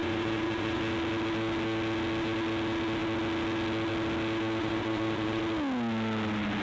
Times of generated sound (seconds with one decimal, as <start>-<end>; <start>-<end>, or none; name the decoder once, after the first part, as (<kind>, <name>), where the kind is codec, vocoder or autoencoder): 0.0-0.8 (vocoder, Vocos); 4.6-5.4

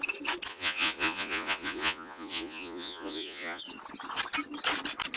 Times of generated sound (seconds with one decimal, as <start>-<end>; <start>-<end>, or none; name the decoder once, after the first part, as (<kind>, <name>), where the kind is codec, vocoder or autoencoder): 0.5-3.6 (vocoder, Vocos)

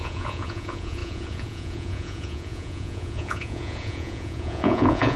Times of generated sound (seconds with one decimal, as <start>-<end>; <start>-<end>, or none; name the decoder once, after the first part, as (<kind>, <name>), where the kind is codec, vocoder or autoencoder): 0.0-5.2 (vocoder, Vocos)

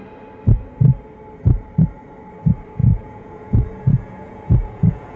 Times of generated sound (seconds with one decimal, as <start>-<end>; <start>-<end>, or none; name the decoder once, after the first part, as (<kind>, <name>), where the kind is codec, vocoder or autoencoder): 2.8-5.2 (vocoder, Vocos)

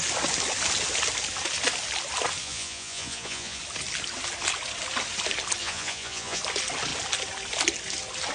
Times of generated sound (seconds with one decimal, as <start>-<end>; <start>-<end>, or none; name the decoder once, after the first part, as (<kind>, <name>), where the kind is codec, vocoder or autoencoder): 2.4-3.6 (vocoder, Vocos); 5.6-6.4

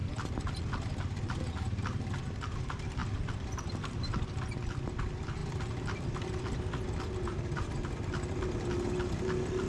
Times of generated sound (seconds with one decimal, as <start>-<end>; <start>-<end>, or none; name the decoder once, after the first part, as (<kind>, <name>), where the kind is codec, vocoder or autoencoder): none

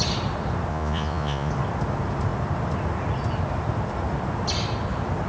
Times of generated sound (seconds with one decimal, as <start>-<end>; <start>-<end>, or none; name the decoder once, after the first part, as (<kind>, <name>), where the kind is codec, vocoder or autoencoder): 0.7-1.5 (vocoder, Vocos)